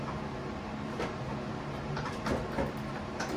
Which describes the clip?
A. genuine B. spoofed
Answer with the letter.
B